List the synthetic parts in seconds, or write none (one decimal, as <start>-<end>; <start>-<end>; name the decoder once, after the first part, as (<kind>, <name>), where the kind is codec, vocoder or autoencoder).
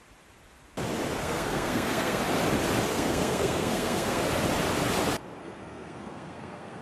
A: 1.2-2.2 (codec, SNAC); 2.9-4.2; 5.4-6.8